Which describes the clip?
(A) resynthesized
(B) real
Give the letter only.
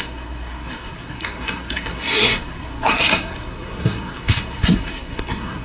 A